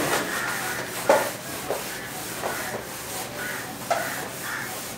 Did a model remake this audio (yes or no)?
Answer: no